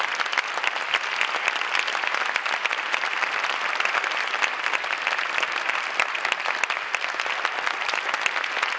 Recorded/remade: recorded